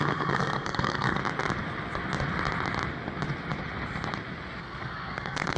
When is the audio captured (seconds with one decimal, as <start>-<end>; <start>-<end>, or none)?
1.2-4.6